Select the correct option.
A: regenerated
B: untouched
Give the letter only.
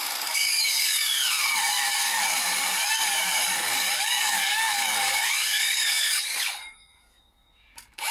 A